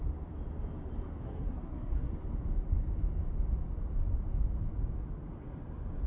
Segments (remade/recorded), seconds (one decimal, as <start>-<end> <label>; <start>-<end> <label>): 0.0-1.2 recorded; 1.2-2.1 remade; 2.1-6.1 recorded